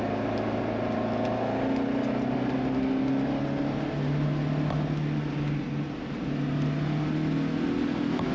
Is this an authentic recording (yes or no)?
yes